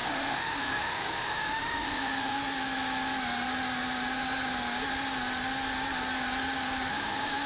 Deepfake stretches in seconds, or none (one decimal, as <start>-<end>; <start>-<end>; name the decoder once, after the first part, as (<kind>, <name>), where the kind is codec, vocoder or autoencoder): 0.0-2.4 (autoencoder, DAC-VAE); 6.9-7.5